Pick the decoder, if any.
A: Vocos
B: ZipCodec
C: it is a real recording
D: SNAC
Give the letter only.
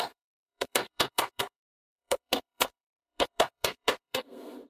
D